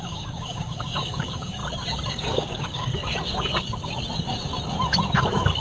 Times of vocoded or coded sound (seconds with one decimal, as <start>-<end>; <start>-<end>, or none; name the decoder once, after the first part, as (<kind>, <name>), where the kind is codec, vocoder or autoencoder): 0.0-1.6 (codec, DAC); 2.1-2.9